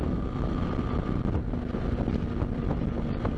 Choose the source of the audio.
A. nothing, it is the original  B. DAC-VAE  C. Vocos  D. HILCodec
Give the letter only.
A